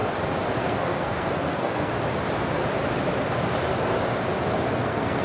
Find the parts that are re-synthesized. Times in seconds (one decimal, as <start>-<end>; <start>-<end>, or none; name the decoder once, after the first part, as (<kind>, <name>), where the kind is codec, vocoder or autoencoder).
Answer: 0.6-1.9 (codec, SNAC); 4.7-5.2